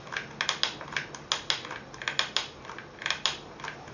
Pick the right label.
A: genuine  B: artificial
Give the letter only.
A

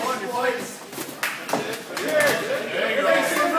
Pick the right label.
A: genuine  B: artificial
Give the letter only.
A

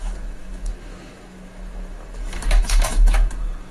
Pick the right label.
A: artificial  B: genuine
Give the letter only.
A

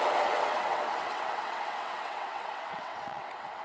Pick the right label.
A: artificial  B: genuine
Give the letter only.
A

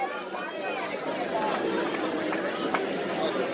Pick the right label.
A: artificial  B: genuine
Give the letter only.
B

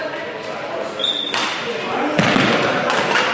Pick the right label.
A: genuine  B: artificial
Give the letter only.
A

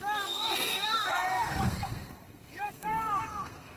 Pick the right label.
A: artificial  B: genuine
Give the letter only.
A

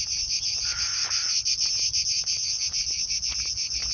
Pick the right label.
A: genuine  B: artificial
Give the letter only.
A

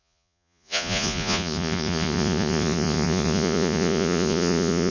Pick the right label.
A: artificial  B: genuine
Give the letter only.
A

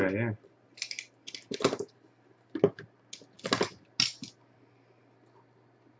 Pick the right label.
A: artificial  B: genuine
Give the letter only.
B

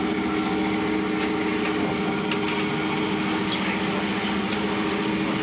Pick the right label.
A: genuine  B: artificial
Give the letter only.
A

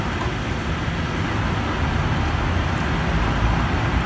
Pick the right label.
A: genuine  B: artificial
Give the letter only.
A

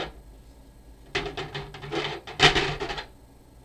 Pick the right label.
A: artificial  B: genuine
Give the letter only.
B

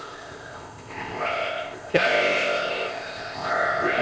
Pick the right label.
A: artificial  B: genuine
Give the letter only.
A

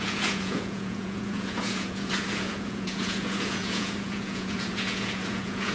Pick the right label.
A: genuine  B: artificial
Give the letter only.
B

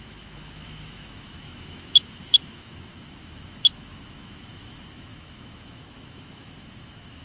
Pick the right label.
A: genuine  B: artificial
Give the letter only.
B